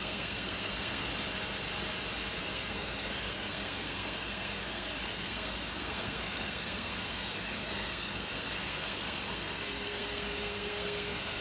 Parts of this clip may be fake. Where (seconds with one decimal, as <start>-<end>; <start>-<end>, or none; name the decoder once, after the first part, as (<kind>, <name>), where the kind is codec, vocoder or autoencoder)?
0.0-1.1 (codec, SNAC); 2.4-11.4